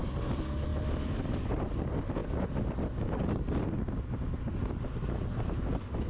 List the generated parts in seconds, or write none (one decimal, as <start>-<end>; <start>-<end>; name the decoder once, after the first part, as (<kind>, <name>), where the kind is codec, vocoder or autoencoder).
none